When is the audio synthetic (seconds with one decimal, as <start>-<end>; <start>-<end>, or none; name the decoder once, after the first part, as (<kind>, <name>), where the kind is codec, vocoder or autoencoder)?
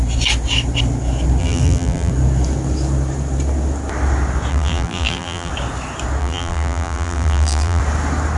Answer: 1.4-2.1 (vocoder, BigVGAN v2); 4.5-5.5; 6.2-7.8